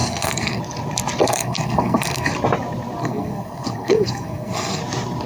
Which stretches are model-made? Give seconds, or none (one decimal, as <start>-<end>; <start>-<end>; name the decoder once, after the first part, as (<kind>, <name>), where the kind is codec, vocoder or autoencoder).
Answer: 0.0-0.6 (codec, SNAC); 1.2-2.3; 3.0-4.8